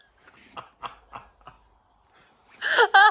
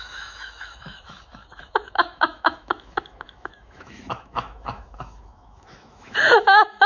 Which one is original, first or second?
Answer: first